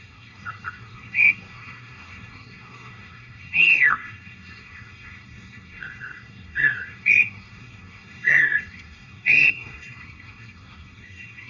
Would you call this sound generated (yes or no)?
yes